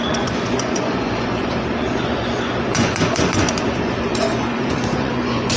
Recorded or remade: remade